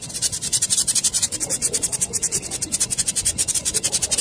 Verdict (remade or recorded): remade